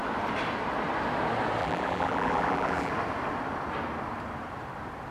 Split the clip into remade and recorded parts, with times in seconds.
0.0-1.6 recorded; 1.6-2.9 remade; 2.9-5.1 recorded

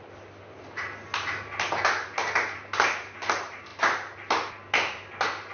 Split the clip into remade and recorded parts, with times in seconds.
0.0-5.5 recorded

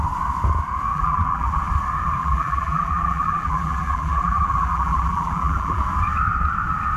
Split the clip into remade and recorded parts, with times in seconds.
0.0-0.9 recorded; 0.9-1.6 remade; 1.6-2.2 recorded; 2.2-5.8 remade; 5.8-7.0 recorded